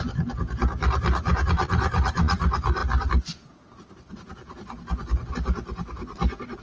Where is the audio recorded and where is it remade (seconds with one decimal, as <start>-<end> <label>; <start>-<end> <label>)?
0.0-6.6 recorded